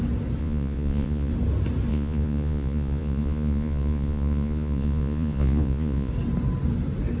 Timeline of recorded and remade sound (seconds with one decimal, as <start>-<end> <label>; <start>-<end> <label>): 0.0-0.4 recorded; 0.4-1.3 remade; 1.3-1.9 recorded; 1.9-6.1 remade; 6.1-7.2 recorded